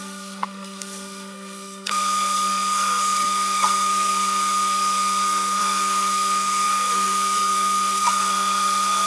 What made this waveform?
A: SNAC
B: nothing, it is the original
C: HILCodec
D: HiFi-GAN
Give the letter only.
A